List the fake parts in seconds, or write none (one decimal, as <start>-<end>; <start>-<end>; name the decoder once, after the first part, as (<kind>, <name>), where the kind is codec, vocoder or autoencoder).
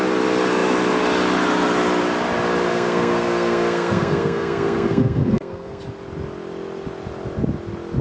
2.7-5.8 (codec, SNAC)